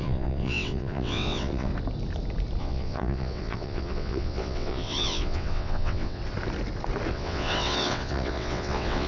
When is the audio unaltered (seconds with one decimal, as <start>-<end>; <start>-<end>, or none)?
1.7-2.6; 6.2-7.1

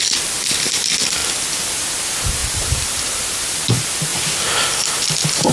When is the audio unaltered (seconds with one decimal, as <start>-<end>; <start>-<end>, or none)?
0.0-2.4; 3.2-5.5